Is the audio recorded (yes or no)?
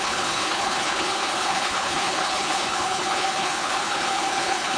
no